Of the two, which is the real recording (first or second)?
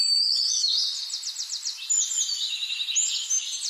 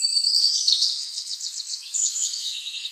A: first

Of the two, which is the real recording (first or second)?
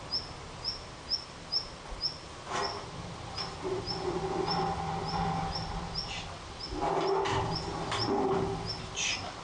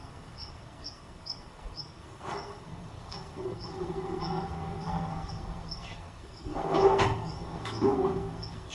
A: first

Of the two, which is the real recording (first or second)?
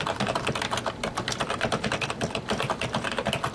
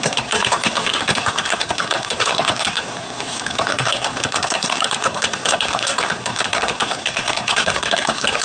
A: first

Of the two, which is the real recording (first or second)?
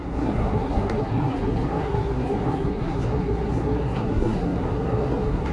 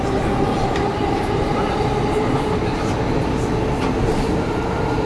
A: second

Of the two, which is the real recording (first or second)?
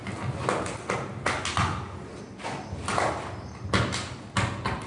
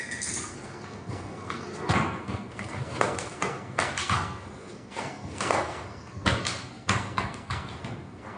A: first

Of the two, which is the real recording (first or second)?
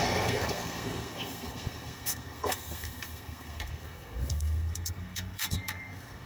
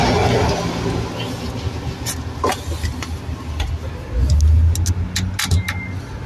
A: second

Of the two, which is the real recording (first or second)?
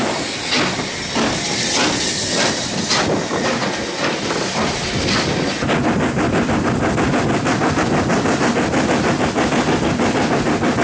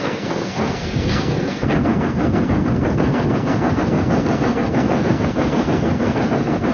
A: first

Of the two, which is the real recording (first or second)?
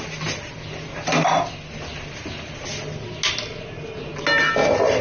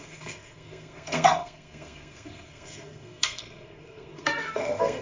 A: first